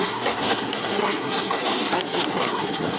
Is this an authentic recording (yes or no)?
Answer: no